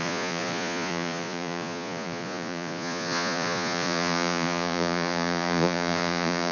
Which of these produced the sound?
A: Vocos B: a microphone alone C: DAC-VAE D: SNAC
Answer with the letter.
A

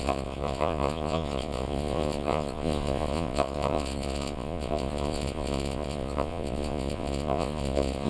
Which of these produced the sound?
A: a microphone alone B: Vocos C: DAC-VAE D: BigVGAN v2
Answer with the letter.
B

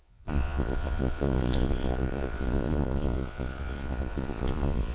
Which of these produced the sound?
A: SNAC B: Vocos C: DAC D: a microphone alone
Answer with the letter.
B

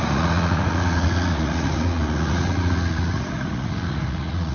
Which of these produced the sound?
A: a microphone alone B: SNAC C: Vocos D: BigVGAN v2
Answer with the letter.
C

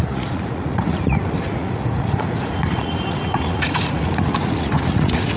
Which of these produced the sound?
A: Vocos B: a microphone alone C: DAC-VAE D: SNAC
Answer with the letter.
A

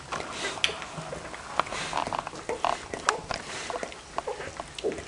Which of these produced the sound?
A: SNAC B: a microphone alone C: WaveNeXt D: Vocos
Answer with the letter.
B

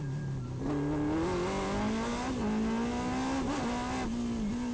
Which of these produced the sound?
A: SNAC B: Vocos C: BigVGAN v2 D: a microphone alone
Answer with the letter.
D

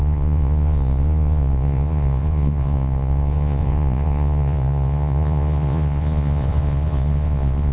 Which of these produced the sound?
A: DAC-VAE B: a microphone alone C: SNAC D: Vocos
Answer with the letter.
D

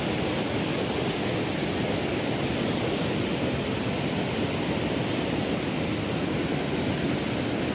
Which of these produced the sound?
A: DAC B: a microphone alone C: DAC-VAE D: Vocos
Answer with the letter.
B